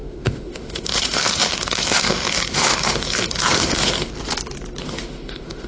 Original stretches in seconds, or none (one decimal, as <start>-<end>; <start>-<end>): 4.1-4.8